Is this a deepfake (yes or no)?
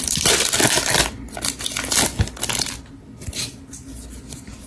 no